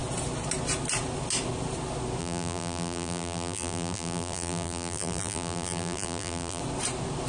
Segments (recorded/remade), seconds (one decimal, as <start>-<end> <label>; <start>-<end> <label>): 0.0-2.2 recorded; 2.2-6.6 remade; 6.6-7.3 recorded